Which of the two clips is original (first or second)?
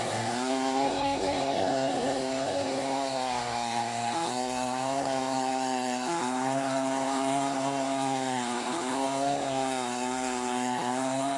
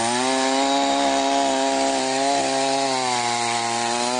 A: second